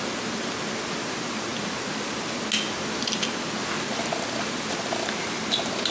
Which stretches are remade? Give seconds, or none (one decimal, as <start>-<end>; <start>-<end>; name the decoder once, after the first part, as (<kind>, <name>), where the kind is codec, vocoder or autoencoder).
none